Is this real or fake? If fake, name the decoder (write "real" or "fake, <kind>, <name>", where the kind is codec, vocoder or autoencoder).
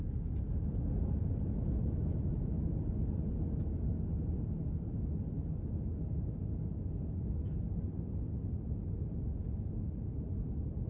real